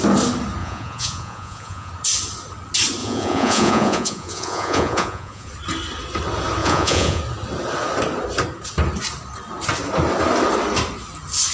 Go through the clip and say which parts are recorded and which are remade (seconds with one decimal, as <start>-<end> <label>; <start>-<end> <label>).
0.0-0.6 recorded; 0.6-1.9 remade; 1.9-3.0 recorded; 3.0-5.5 remade; 5.5-6.6 recorded; 6.6-7.2 remade; 7.2-11.5 recorded